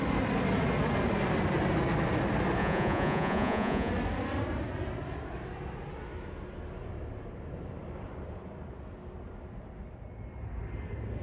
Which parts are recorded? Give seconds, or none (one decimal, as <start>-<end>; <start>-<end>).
0.0-2.6; 3.9-11.2